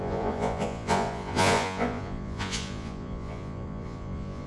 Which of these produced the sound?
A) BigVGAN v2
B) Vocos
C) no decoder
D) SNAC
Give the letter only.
B